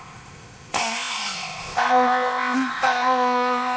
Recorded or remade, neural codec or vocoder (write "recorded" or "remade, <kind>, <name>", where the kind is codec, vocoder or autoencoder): remade, codec, ZipCodec